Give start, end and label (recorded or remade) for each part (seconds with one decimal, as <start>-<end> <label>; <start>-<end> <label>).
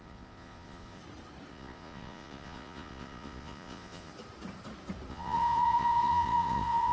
0.0-1.0 remade; 1.0-1.5 recorded; 1.5-4.1 remade; 4.1-5.1 recorded; 5.1-6.9 remade